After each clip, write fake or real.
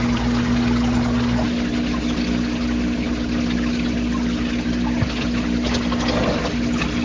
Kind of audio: real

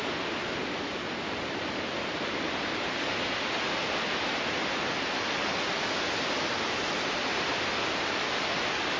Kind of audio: real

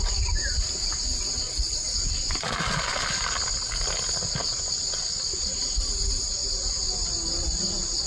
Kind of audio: real